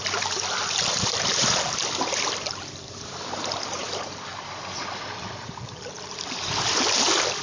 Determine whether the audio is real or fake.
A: fake